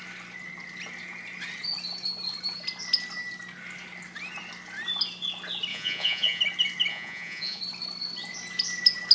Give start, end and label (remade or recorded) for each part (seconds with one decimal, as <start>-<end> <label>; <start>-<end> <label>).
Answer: 0.0-5.7 recorded; 5.7-6.4 remade; 6.4-6.9 recorded; 6.9-7.6 remade; 7.6-9.1 recorded